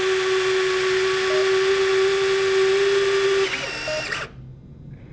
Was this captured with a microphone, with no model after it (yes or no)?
yes